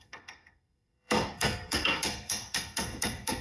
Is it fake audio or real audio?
fake